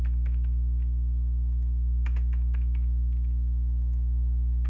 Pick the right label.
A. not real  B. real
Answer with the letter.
A